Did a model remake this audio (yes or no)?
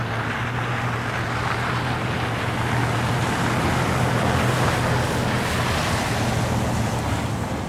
no